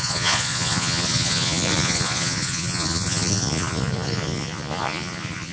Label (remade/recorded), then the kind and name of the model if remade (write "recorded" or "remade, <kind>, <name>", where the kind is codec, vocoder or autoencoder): remade, vocoder, Vocos